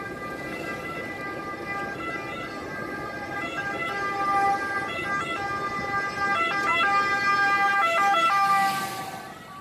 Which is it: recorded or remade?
recorded